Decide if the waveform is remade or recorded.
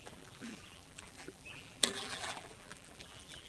remade